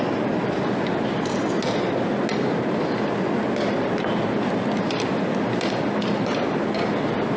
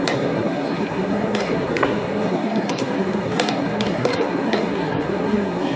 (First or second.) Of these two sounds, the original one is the first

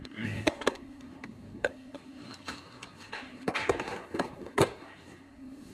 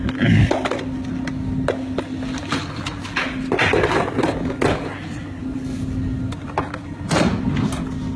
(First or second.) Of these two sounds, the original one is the second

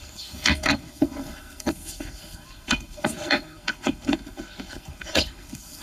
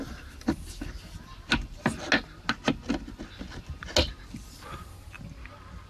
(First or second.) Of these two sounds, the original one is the second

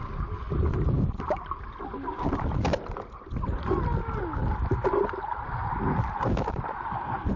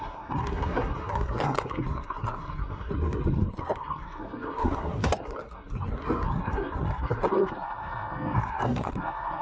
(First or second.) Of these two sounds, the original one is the first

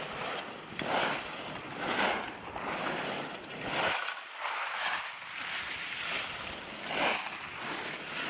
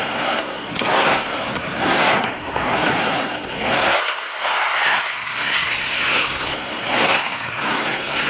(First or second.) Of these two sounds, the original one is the first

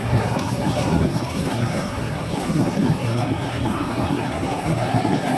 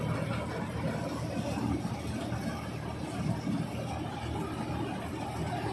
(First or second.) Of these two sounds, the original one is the second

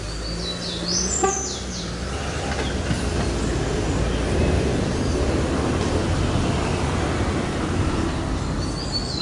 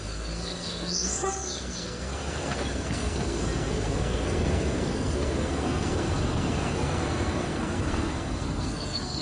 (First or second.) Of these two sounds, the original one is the first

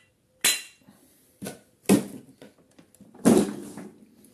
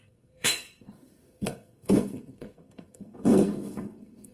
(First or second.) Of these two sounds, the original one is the first